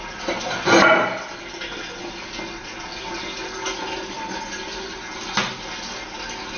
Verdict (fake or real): real